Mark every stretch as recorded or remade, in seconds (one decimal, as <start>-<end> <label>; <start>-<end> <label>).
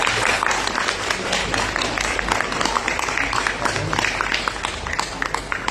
0.0-5.7 recorded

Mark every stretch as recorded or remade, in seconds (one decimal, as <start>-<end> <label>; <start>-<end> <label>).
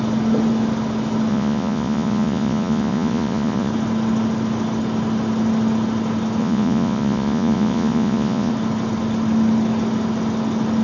0.0-1.3 recorded; 1.3-3.7 remade; 3.7-6.4 recorded; 6.4-8.5 remade; 8.5-10.8 recorded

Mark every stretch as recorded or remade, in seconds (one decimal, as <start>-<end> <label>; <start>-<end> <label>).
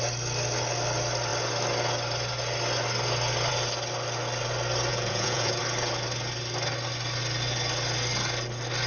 0.0-4.9 recorded; 4.9-5.6 remade; 5.6-8.9 recorded